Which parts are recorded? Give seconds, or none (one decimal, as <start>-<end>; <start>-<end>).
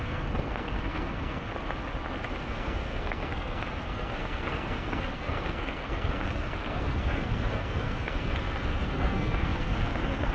1.5-2.4